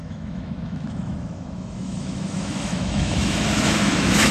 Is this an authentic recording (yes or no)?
no